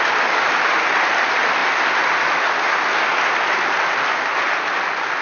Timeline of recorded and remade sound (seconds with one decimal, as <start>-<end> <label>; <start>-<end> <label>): 0.0-5.2 recorded